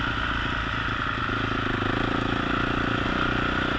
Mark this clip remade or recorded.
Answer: recorded